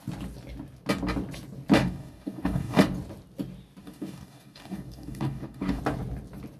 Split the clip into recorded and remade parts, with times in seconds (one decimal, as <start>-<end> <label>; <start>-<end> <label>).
0.0-1.8 recorded; 1.8-2.8 remade; 2.8-3.8 recorded; 3.8-5.8 remade; 5.8-6.6 recorded